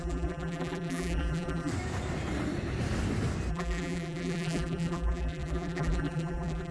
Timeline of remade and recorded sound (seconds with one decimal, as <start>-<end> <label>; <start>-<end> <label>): 0.0-1.7 remade; 1.7-3.5 recorded; 3.5-6.7 remade